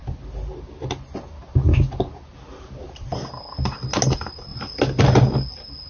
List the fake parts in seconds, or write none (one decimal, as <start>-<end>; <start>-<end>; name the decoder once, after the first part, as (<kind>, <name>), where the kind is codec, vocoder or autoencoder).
none